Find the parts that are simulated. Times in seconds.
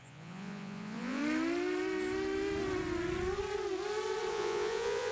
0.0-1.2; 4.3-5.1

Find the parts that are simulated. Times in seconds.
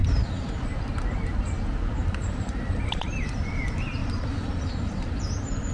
0.0-0.5; 2.0-3.3; 4.0-5.3